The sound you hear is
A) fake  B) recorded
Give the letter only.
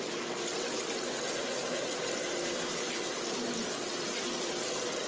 B